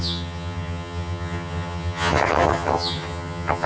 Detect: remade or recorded remade